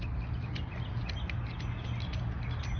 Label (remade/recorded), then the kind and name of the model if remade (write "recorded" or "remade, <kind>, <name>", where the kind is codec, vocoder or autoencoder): recorded